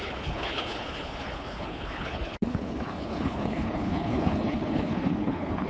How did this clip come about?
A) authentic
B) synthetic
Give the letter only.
B